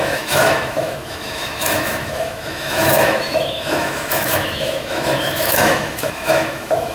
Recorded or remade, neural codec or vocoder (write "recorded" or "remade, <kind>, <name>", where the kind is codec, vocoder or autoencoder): remade, autoencoder, DAC-VAE